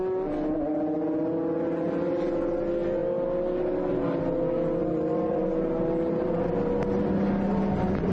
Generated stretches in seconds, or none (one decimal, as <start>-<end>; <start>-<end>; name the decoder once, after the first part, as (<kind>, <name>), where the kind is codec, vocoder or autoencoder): 4.8-5.4 (vocoder, BigVGAN v2)